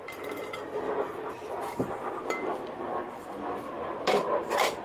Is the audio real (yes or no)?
yes